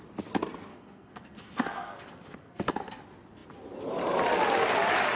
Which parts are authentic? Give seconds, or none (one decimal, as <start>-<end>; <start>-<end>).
0.0-0.7; 3.0-5.2